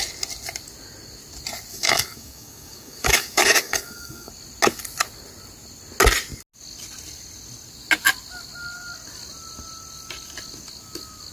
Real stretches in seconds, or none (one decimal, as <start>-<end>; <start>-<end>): 0.0-1.7; 4.3-11.3